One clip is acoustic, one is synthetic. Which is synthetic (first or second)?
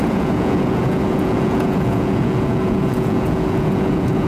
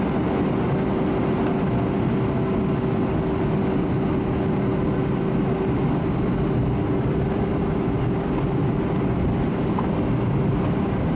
first